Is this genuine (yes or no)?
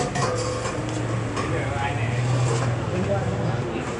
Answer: yes